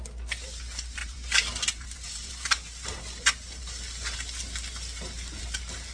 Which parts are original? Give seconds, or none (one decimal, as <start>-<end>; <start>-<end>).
0.0-1.0; 3.0-5.9